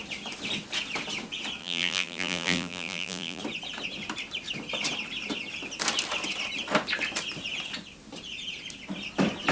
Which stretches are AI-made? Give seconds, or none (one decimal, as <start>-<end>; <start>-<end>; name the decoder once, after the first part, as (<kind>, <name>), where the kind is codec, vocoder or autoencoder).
1.6-3.4 (vocoder, BigVGAN v2)